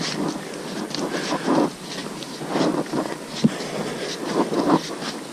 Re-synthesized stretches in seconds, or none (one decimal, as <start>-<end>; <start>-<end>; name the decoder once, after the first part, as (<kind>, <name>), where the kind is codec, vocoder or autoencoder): 2.0-3.1 (vocoder, BigVGAN v2)